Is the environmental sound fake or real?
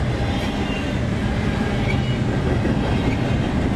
real